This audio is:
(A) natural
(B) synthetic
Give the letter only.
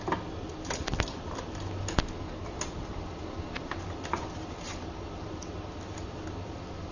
A